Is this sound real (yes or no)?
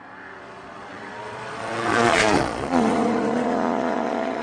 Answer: no